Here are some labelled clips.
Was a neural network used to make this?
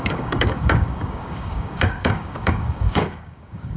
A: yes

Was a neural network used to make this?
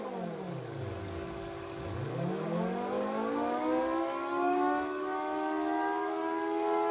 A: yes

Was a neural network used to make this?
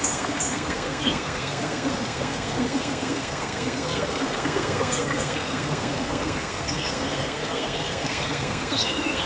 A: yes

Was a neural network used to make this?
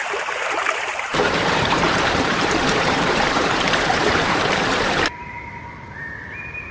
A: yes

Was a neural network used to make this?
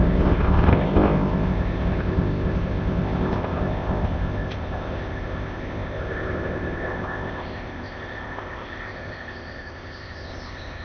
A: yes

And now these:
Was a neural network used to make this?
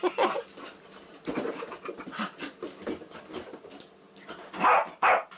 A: no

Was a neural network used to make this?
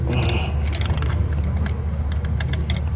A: no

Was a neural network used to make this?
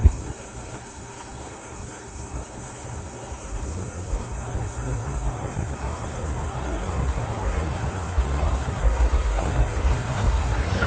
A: yes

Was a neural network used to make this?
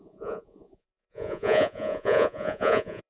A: yes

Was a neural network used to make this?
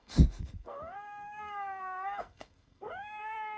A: yes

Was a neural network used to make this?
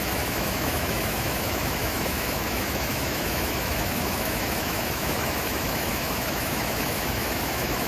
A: yes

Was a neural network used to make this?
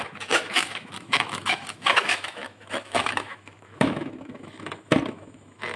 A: yes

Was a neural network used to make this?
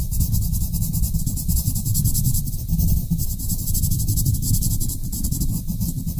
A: no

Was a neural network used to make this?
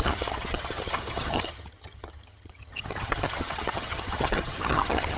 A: yes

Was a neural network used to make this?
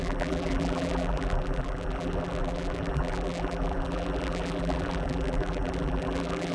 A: yes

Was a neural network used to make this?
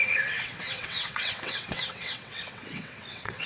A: yes